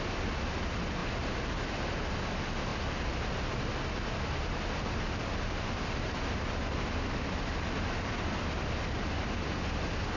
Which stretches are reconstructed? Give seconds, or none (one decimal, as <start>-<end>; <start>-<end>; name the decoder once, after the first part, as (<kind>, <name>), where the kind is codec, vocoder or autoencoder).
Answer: none